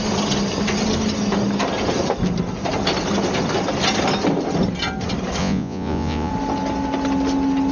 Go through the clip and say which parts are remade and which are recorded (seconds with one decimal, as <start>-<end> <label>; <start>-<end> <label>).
0.0-5.4 recorded; 5.4-6.3 remade; 6.3-7.7 recorded